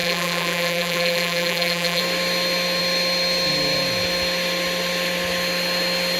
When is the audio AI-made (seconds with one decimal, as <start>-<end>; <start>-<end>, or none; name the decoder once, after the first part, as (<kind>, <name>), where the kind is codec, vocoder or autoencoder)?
0.0-2.0 (vocoder, BigVGAN v2)